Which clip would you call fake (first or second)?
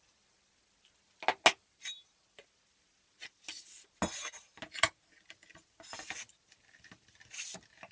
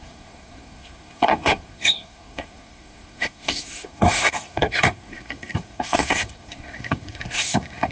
second